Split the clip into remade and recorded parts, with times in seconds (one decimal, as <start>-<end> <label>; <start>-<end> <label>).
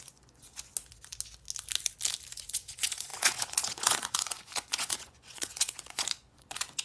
0.0-0.7 remade; 0.7-2.3 recorded; 2.3-6.8 remade